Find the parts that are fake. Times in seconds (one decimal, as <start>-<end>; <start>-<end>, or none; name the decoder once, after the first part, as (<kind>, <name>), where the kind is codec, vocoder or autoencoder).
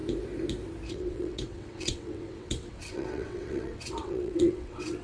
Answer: 0.9-5.0 (vocoder, WaveNeXt)